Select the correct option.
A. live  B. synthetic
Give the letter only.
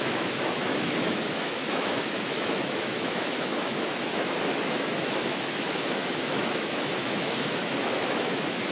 B